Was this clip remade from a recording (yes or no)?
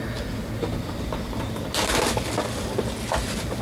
no